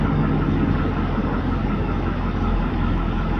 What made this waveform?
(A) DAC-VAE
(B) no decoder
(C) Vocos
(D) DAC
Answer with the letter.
D